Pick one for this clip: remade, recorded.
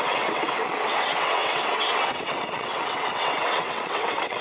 remade